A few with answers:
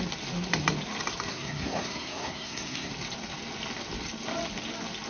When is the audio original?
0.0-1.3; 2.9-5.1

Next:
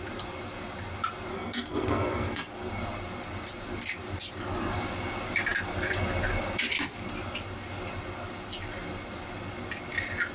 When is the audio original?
0.0-1.3; 2.5-10.3

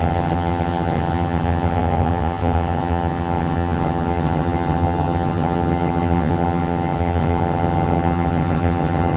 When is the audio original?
none